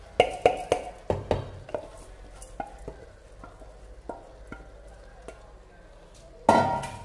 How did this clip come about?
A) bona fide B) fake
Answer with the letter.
A